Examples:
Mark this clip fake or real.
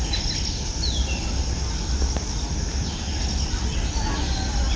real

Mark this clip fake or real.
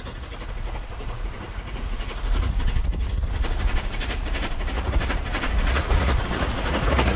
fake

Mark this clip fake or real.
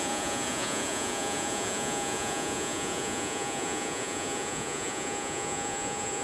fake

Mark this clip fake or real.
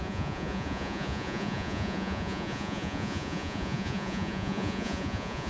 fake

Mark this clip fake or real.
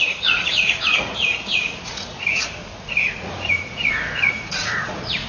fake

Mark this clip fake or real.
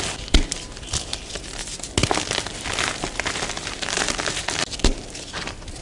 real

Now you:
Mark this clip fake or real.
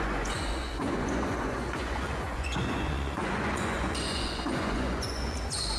fake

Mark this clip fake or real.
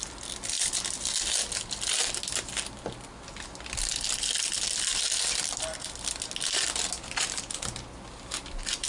real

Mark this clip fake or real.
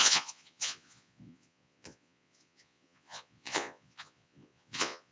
fake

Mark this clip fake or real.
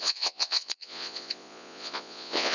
fake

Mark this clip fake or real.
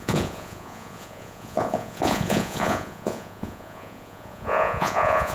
fake